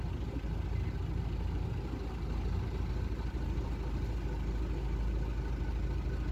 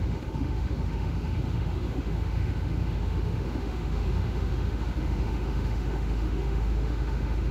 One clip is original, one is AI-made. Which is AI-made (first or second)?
second